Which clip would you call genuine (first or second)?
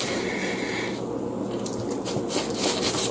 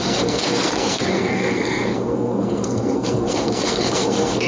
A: first